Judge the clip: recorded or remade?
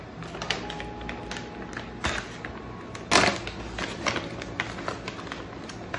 recorded